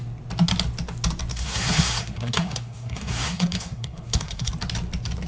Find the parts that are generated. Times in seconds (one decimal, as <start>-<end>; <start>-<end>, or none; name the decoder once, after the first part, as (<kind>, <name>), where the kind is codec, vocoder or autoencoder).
1.3-4.5 (codec, SNAC)

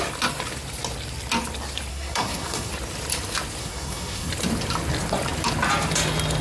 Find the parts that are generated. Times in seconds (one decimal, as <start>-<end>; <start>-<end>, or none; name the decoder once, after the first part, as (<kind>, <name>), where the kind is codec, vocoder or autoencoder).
1.9-2.7 (codec, SNAC); 3.6-4.3

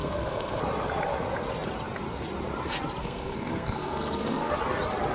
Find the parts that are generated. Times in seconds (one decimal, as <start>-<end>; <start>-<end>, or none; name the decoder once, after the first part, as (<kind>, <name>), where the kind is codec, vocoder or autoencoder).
0.0-0.6 (codec, SNAC); 3.0-4.5